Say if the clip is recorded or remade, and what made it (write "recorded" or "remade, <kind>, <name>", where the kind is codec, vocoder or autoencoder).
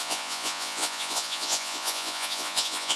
remade, vocoder, Vocos